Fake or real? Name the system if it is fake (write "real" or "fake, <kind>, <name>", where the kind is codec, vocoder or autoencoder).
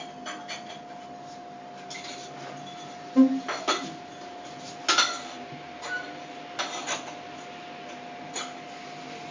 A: real